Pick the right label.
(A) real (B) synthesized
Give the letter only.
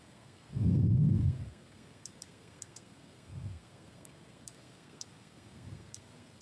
B